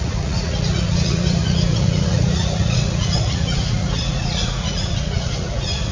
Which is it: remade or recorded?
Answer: remade